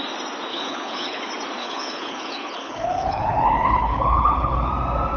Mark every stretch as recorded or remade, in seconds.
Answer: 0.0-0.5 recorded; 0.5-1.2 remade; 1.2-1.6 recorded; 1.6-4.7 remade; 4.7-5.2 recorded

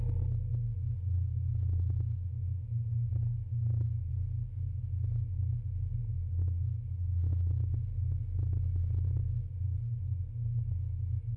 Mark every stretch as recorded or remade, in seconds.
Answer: 0.0-11.4 recorded